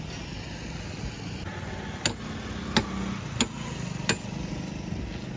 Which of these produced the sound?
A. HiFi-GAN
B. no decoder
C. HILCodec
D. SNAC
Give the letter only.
B